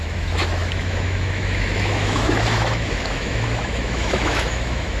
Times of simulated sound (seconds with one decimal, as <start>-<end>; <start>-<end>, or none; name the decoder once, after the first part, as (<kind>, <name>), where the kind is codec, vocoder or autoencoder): 0.0-5.0 (autoencoder, DAC-VAE)